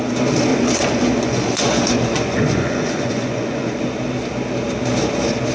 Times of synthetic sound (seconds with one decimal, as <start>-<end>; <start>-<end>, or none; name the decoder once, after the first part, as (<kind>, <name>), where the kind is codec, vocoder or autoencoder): 0.5-3.8 (vocoder, Vocos)